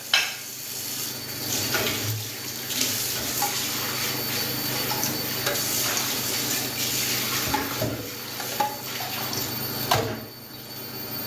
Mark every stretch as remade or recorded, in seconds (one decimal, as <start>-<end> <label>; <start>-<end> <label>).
0.0-11.3 recorded